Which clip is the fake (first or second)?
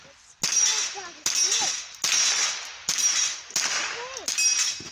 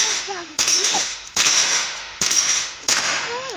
second